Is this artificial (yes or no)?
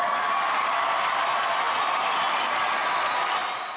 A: no